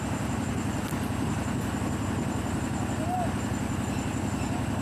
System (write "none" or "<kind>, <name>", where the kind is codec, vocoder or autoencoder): none